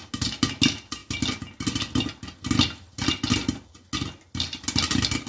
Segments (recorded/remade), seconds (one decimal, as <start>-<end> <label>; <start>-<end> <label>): 0.0-5.3 recorded